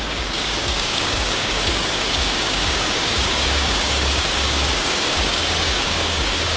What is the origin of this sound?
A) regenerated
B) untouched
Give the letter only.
A